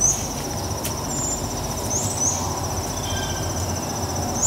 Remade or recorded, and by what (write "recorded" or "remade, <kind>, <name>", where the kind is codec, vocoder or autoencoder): recorded